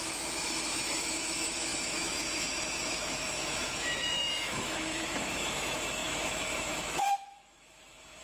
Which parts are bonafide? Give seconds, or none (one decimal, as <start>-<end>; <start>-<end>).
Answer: none